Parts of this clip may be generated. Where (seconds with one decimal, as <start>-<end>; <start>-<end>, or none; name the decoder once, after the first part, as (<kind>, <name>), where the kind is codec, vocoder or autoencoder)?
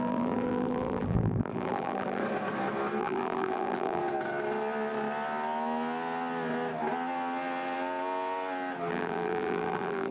0.0-2.2 (vocoder, BigVGAN v2); 3.0-4.0; 8.9-10.1